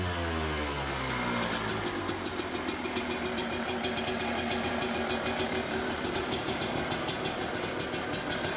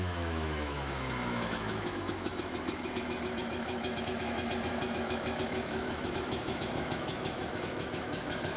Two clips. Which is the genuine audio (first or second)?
first